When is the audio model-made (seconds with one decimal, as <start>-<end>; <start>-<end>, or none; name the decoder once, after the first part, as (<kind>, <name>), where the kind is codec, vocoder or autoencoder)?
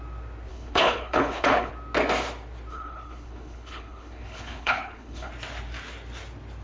0.5-1.7 (codec, HILCodec); 2.7-5.3